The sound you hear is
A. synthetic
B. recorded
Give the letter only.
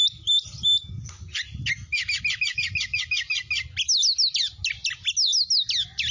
B